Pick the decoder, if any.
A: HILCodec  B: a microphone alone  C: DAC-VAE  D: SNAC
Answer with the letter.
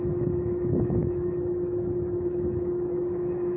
C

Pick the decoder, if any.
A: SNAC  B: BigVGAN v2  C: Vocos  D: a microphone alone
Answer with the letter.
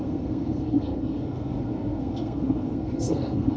A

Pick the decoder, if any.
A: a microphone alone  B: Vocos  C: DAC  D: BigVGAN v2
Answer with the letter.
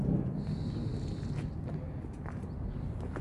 A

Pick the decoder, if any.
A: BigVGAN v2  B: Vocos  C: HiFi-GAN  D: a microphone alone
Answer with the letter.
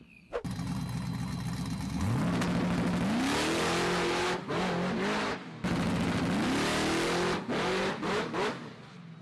D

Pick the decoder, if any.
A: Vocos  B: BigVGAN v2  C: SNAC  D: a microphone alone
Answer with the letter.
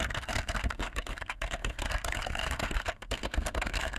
C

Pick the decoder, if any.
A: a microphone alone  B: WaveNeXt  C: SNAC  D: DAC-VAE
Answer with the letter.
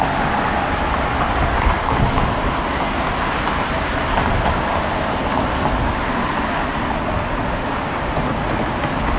A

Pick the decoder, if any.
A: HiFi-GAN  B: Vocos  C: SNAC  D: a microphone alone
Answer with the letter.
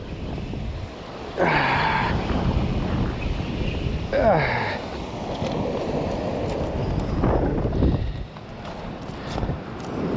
D